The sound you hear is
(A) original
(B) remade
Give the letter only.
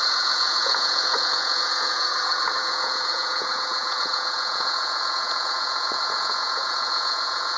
B